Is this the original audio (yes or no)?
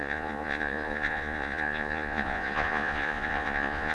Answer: no